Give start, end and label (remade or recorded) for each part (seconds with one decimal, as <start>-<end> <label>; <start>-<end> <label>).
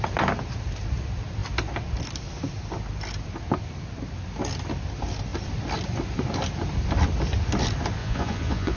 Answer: 0.0-8.0 recorded; 8.0-8.8 remade